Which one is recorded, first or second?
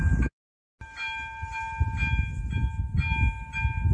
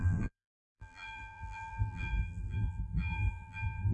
first